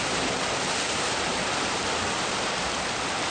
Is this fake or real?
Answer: real